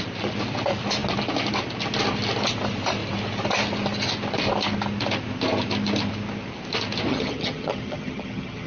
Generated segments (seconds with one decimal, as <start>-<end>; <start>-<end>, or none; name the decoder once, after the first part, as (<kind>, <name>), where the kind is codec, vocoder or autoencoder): 7.1-8.7 (vocoder, HiFi-GAN)